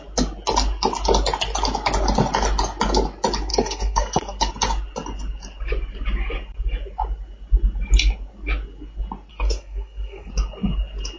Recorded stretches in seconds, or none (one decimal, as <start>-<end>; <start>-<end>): 0.0-3.5; 4.5-9.3; 10.3-11.2